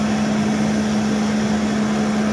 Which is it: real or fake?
real